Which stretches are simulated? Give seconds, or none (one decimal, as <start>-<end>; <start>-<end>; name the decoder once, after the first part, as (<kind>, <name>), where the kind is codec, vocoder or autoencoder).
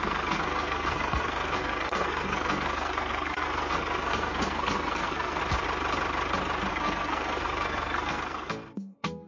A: 0.0-5.4 (codec, SNAC); 6.7-9.3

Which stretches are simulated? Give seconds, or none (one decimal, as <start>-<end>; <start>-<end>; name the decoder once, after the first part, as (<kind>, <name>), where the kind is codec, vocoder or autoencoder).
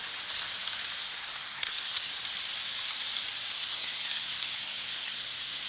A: 1.0-2.1 (codec, SNAC); 3.5-5.7